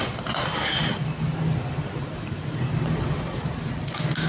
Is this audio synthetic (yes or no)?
no